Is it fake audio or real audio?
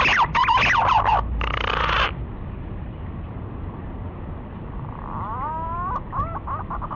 real